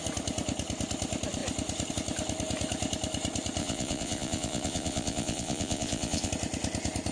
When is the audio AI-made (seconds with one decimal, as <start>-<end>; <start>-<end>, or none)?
3.6-6.3